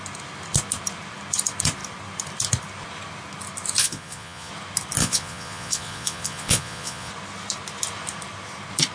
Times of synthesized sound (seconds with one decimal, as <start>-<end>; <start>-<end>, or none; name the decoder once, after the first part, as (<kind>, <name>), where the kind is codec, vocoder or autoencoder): 3.8-4.5 (vocoder, Vocos); 5.0-7.1